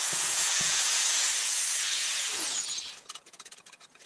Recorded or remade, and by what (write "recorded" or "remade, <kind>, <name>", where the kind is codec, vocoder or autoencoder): remade, vocoder, Vocos